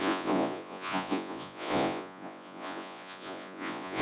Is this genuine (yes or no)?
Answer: no